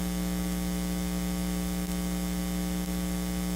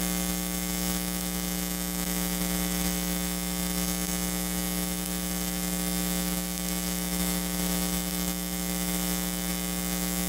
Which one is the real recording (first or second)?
first